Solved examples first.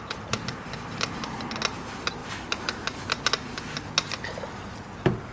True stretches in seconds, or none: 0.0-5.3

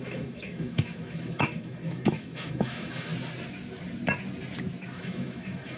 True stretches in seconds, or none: 3.1-4.9

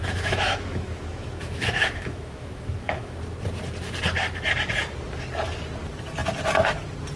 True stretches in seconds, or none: 3.2-7.2

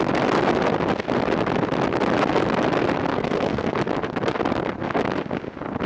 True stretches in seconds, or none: 0.0-3.1; 3.7-5.9

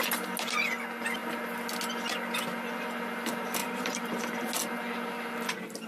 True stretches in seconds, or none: 0.0-3.6; 4.5-5.9